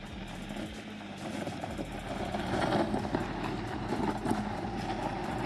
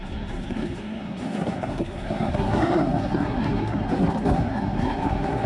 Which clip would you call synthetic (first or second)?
second